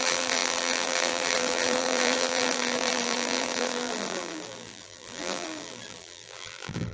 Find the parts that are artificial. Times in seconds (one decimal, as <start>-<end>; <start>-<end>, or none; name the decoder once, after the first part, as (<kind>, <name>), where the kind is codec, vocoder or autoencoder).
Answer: 0.0-6.9 (vocoder, BigVGAN v2)